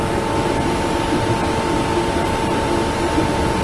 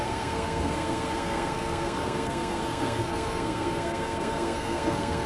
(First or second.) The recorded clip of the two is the first